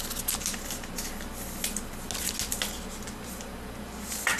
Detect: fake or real real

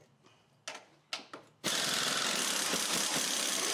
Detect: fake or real real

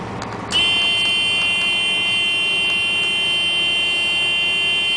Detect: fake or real real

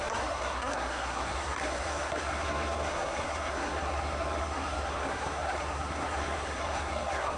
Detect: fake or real fake